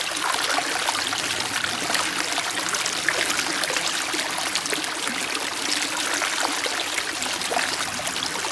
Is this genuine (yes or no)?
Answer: yes